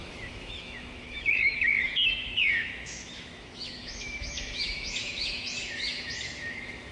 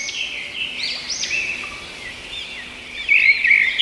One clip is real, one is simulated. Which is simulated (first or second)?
first